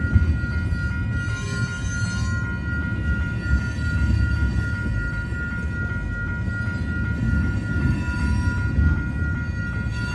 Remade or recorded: recorded